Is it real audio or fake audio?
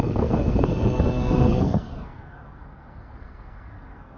fake